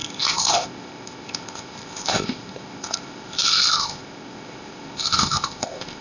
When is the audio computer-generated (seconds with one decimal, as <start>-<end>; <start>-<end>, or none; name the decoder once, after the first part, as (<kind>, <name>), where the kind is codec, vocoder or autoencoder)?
0.0-6.0 (codec, ZipCodec)